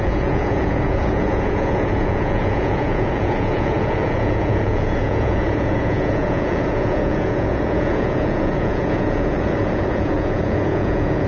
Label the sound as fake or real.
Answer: fake